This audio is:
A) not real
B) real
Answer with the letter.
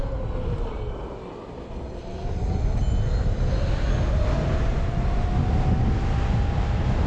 B